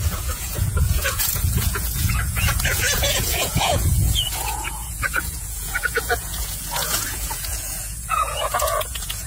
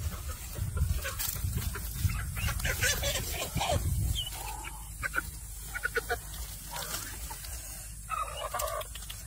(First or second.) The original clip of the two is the second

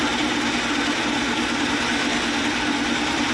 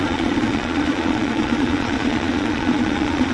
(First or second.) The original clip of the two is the first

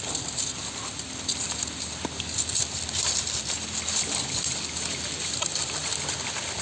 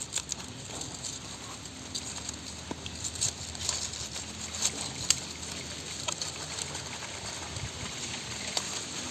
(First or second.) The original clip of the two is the second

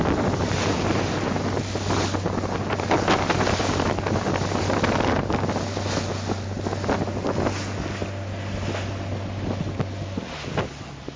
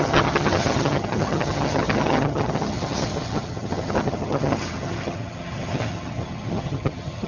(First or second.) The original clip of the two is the first